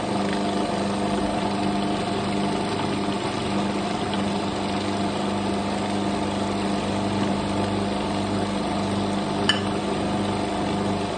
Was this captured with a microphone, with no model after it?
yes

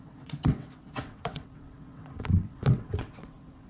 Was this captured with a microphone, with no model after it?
no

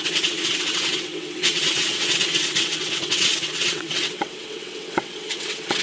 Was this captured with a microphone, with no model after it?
no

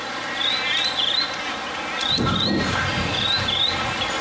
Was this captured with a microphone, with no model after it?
yes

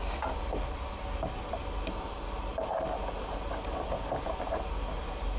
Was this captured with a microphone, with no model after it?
yes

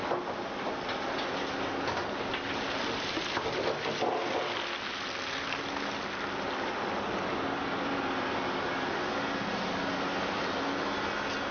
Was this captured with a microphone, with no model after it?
yes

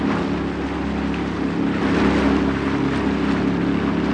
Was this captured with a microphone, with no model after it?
yes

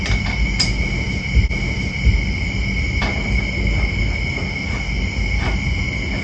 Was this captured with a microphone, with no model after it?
yes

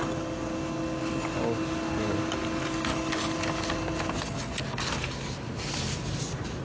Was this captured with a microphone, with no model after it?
yes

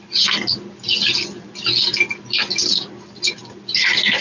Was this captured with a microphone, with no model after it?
yes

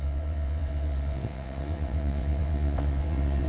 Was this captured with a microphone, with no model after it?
no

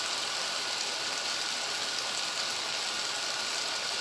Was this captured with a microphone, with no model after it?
yes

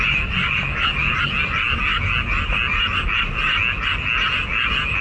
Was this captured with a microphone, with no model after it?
yes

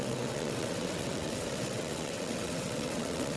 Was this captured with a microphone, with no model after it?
no